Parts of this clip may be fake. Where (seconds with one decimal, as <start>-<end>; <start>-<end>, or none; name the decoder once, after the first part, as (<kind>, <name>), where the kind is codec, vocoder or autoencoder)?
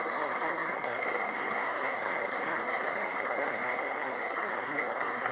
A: 0.0-5.3 (codec, SNAC)